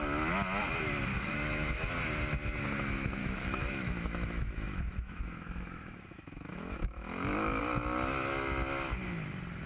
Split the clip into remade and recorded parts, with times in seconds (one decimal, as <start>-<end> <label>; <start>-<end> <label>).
0.0-1.1 recorded; 1.1-1.9 remade; 1.9-3.2 recorded; 3.2-7.6 remade; 7.6-9.7 recorded